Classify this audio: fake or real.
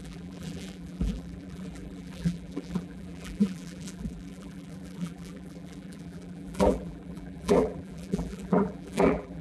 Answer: fake